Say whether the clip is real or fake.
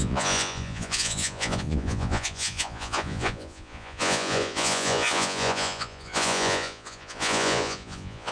fake